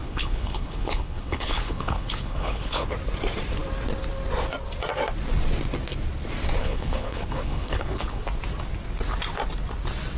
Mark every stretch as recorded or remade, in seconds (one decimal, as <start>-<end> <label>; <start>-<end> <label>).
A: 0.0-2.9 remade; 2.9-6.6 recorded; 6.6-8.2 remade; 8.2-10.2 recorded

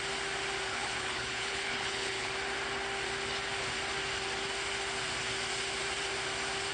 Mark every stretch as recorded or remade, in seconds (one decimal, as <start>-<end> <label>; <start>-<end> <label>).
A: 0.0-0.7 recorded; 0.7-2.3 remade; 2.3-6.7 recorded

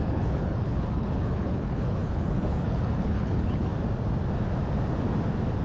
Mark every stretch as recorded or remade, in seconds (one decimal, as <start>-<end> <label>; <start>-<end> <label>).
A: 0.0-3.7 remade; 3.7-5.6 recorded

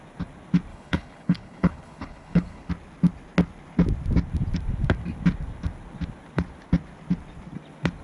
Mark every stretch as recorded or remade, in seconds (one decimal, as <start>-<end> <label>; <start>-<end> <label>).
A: 0.0-0.7 recorded; 0.7-2.7 remade; 2.7-8.0 recorded